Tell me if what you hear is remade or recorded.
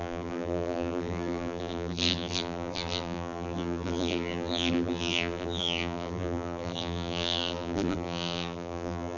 remade